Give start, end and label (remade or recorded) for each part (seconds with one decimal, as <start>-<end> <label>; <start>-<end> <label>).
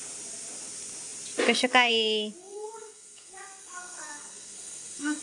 0.0-2.4 recorded; 2.4-5.2 remade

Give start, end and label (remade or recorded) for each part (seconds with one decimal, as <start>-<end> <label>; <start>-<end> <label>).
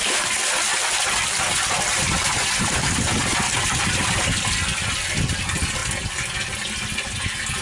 0.0-7.6 recorded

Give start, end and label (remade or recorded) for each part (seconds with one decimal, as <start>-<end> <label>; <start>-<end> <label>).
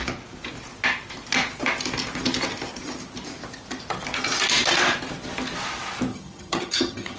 0.0-6.1 recorded; 6.1-7.2 remade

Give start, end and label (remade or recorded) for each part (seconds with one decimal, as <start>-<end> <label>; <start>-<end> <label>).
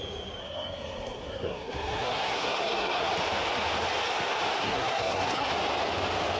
0.0-0.4 recorded; 0.4-3.1 remade; 3.1-4.6 recorded; 4.6-5.5 remade; 5.5-6.4 recorded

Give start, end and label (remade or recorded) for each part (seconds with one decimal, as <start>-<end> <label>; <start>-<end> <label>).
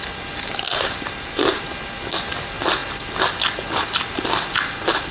0.0-0.7 recorded; 0.7-1.6 remade; 1.6-5.1 recorded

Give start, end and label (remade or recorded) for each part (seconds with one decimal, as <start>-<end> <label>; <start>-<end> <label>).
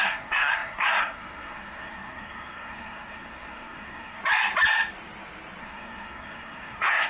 0.0-4.2 remade; 4.2-5.6 recorded; 5.6-7.1 remade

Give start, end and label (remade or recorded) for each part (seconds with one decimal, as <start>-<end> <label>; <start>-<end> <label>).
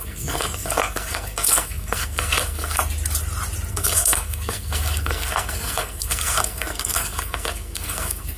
0.0-2.8 remade; 2.8-3.7 recorded; 3.7-8.4 remade